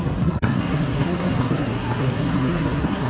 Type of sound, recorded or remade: remade